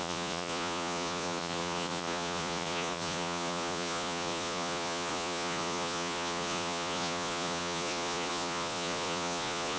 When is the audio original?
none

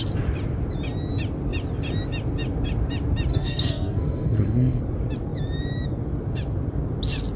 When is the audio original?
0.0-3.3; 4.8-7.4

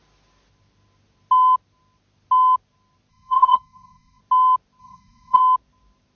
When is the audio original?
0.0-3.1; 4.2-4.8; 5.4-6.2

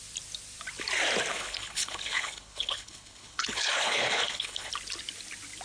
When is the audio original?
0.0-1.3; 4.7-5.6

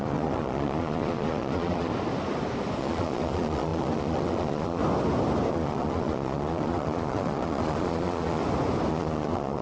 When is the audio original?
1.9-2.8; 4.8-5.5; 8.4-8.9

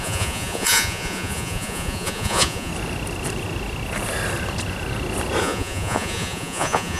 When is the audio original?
2.7-5.4

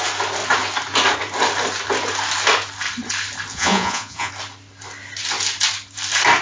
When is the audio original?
0.0-3.5; 4.3-6.4

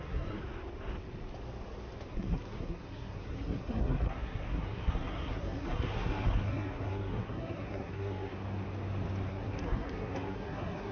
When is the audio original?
0.4-2.1; 8.3-9.3